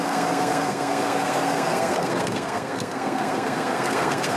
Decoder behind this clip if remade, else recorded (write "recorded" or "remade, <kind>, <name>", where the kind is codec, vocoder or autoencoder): remade, codec, SNAC